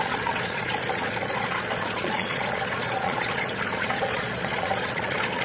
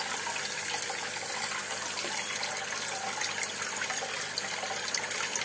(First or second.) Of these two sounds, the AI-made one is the first